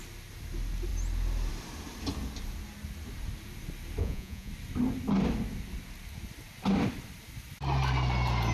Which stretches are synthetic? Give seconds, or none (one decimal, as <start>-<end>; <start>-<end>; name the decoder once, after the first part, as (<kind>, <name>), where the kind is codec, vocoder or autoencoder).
4.0-4.5 (vocoder, Vocos)